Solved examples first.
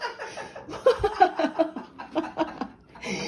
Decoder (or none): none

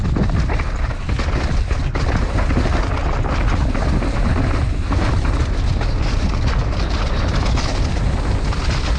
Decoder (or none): none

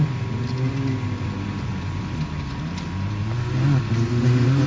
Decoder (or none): none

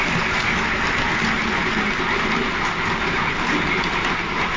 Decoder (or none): none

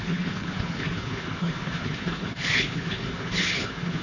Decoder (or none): codec, HILCodec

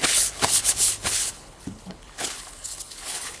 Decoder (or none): codec, HILCodec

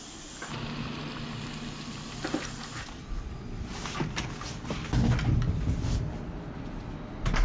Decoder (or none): none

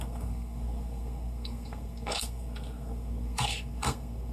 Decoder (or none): codec, SNAC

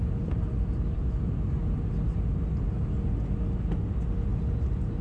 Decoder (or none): none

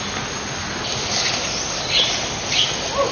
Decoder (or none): none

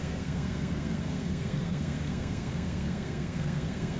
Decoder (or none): codec, SNAC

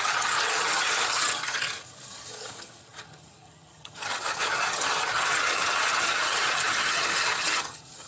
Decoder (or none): vocoder, HiFi-GAN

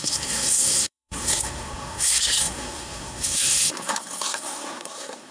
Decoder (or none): codec, SNAC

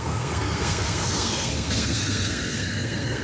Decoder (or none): codec, SNAC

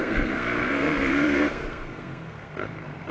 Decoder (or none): codec, SNAC